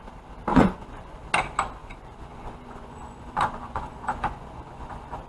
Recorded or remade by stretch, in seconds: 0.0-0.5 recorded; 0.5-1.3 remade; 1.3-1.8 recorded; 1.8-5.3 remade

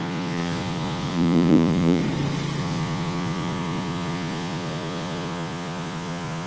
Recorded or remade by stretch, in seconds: 0.0-2.0 remade; 2.0-2.6 recorded; 2.6-6.5 remade

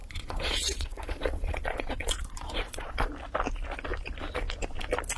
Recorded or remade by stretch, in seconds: 0.0-3.1 remade; 3.1-5.2 recorded

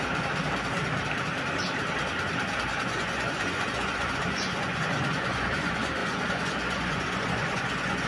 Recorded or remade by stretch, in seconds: 0.0-2.7 recorded; 2.7-8.1 remade